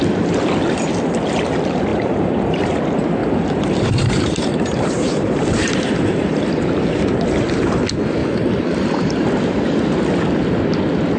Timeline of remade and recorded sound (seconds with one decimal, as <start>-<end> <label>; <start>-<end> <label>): 0.0-1.9 recorded; 1.9-2.6 remade; 2.6-3.2 recorded; 3.2-6.5 remade; 6.5-8.2 recorded; 8.2-9.3 remade; 9.3-11.2 recorded